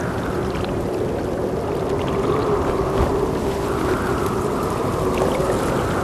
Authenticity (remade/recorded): recorded